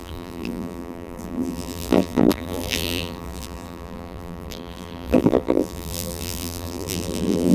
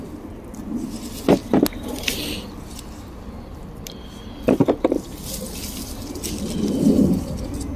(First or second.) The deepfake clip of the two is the first